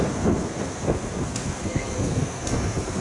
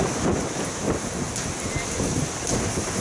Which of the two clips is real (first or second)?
second